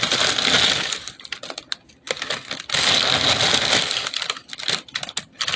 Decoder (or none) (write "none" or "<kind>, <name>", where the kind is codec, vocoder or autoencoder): none